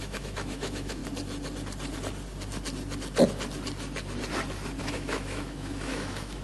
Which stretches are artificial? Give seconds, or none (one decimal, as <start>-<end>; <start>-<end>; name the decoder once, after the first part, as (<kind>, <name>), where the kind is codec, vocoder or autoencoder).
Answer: 0.0-1.0 (autoencoder, DAC-VAE); 4.8-6.4